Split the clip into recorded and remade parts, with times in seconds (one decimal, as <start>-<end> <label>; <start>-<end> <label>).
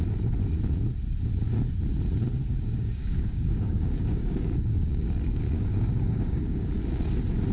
0.0-2.4 recorded; 2.4-6.7 remade; 6.7-7.5 recorded